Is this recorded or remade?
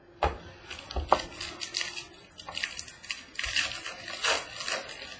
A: recorded